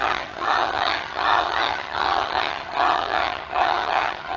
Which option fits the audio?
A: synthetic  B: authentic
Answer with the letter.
A